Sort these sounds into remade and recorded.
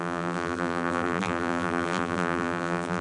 remade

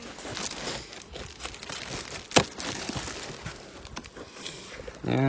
recorded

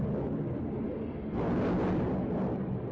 recorded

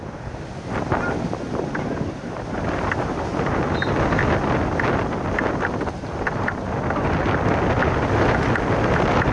recorded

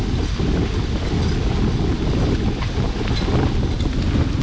recorded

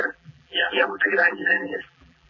remade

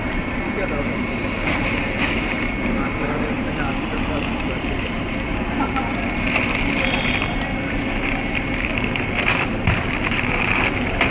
remade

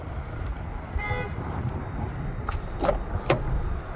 recorded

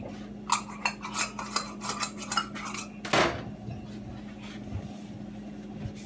recorded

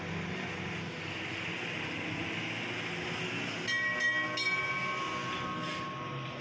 recorded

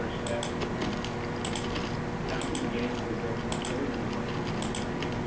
recorded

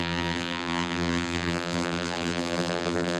remade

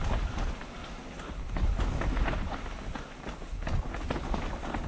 recorded